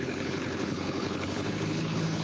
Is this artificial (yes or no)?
yes